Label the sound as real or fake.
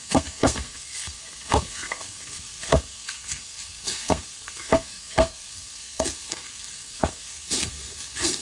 fake